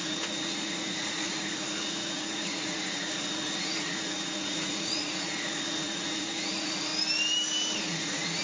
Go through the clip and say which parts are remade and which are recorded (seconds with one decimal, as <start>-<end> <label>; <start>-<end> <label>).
0.0-6.9 remade; 6.9-7.8 recorded; 7.8-8.4 remade